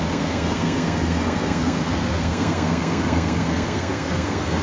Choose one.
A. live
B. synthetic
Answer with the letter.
B